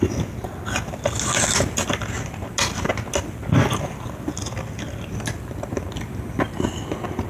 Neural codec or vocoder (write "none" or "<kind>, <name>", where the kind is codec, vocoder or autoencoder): none